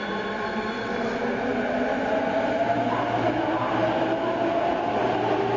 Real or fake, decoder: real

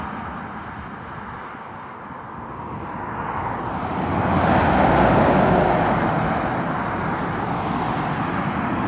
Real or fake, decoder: real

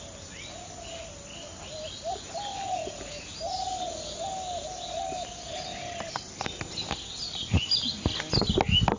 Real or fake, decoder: real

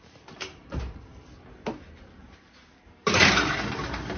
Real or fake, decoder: real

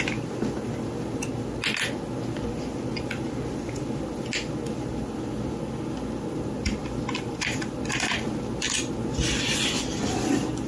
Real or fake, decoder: real